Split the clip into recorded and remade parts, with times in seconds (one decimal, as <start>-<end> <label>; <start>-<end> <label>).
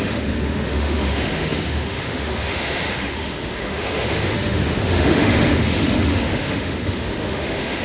0.0-7.8 remade